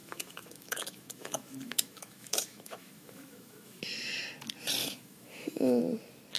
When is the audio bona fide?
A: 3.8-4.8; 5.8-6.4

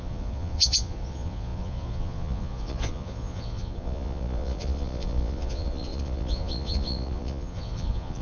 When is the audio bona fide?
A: none

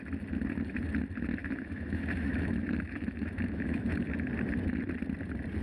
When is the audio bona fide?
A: 0.0-1.4; 4.1-5.6

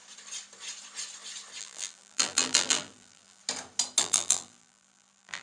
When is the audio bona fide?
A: 0.0-1.6; 3.4-4.0

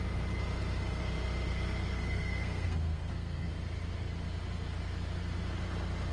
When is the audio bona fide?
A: 0.0-1.5; 3.5-6.1

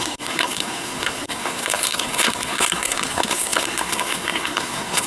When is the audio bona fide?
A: none

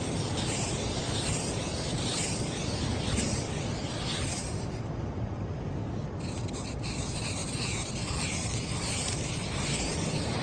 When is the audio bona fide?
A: 0.0-10.4

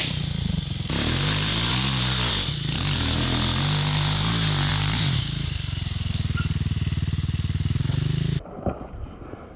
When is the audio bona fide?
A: 0.0-1.5; 2.3-4.7; 6.1-9.6